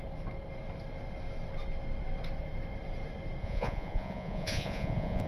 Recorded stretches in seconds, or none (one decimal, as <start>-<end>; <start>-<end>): 0.0-3.4